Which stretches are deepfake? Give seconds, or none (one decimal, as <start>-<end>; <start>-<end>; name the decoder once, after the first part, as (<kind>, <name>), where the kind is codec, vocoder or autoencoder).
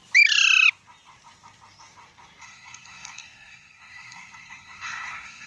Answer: 2.4-5.5 (codec, SNAC)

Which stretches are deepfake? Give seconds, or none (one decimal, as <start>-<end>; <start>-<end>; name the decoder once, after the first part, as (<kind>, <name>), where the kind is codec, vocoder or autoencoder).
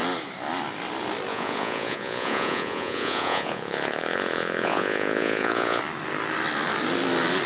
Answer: 1.3-5.8 (vocoder, Vocos)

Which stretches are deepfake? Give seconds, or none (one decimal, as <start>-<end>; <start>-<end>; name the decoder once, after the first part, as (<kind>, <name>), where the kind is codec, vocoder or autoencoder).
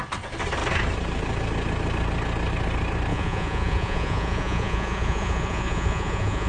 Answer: 3.1-6.5 (vocoder, Vocos)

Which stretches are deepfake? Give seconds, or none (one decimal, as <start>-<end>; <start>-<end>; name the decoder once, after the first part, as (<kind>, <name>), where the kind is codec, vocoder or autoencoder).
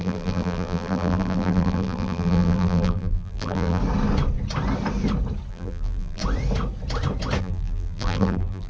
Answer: 0.0-3.8 (vocoder, BigVGAN v2); 5.5-6.2; 7.4-8.7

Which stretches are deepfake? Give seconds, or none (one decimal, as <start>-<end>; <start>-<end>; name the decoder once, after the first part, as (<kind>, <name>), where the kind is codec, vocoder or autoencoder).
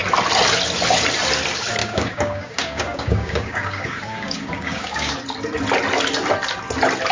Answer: 1.8-5.1 (codec, DAC)